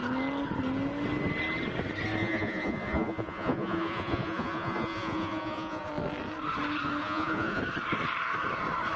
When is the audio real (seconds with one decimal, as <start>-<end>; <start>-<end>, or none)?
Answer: 0.0-2.2; 5.9-7.0; 7.6-9.0